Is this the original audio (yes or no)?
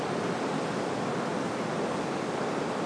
yes